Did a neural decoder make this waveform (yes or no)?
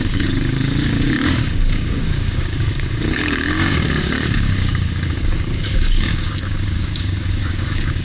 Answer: yes